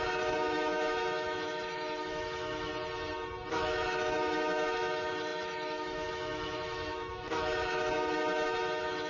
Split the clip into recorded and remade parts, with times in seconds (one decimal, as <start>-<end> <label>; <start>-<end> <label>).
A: 0.0-2.7 remade; 2.7-3.5 recorded; 3.5-9.1 remade